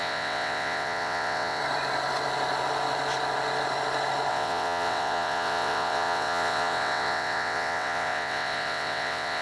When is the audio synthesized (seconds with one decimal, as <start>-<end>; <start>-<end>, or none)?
0.0-1.6; 4.3-9.4